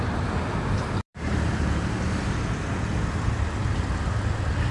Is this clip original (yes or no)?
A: no